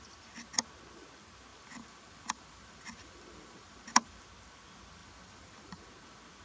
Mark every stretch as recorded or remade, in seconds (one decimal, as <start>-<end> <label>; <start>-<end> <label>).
0.0-1.5 recorded; 1.5-4.2 remade; 4.2-5.0 recorded; 5.0-5.9 remade; 5.9-6.4 recorded